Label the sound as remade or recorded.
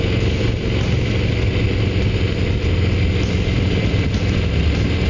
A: recorded